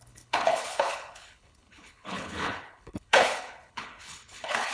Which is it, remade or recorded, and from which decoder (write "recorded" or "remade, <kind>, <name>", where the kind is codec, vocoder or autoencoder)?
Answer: remade, codec, HILCodec